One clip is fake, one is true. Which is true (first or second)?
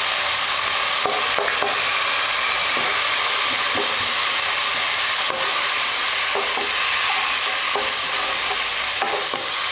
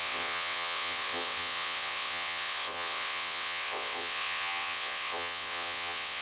first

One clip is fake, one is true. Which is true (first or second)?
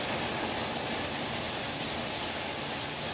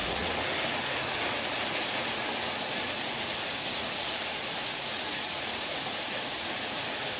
first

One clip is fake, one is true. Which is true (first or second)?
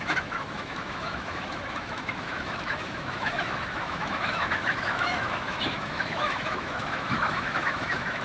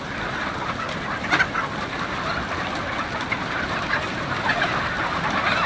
second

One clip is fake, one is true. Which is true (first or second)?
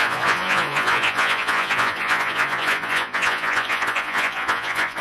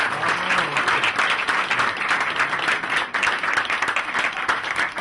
second